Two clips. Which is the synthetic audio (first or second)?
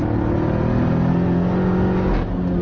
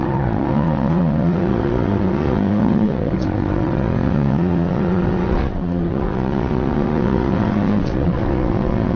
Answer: second